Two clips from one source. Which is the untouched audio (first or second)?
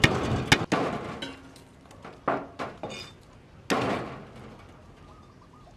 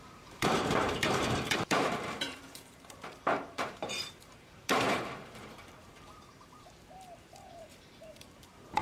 first